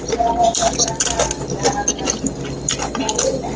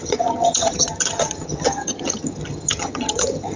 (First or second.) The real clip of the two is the first